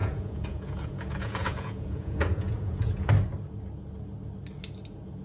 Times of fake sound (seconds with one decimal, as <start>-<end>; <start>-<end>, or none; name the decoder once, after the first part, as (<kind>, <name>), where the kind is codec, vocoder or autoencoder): 0.0-3.1 (vocoder, Vocos)